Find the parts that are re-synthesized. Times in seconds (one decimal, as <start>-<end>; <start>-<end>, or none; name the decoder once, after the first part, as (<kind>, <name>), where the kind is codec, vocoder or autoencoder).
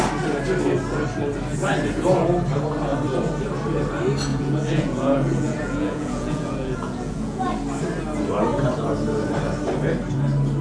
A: 4.3-7.5 (vocoder, Vocos)